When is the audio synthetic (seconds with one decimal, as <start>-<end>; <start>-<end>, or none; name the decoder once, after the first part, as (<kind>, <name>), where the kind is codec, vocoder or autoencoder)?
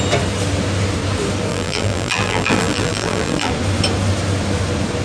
1.5-3.5 (vocoder, BigVGAN v2)